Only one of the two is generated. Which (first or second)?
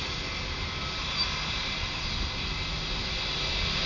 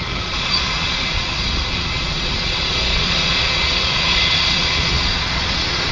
second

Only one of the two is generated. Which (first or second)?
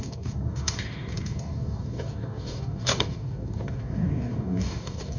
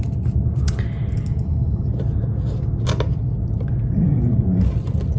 first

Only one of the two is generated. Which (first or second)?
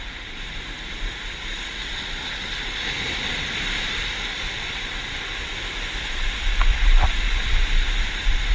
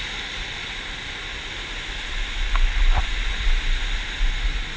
first